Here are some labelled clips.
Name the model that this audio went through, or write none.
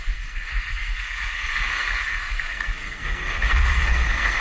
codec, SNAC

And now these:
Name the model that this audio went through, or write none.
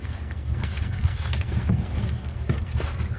codec, SNAC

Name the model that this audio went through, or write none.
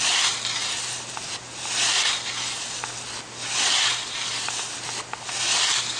none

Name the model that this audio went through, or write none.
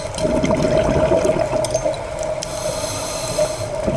none